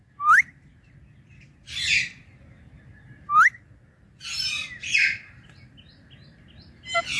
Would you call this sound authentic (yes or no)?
yes